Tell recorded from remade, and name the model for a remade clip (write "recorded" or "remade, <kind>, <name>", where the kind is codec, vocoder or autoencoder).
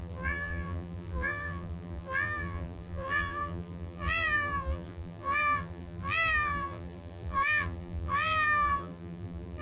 remade, vocoder, BigVGAN v2